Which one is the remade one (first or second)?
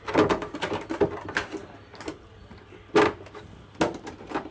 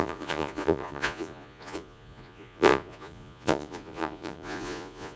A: second